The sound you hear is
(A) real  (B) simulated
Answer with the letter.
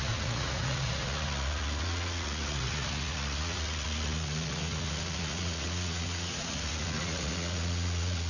B